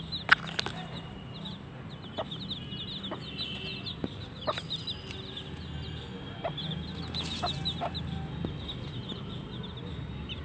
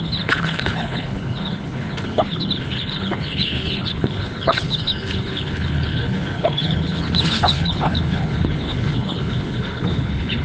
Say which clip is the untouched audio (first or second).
first